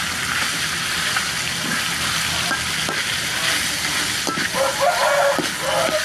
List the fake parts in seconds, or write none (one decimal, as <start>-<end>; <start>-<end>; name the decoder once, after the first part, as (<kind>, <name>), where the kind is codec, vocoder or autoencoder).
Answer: none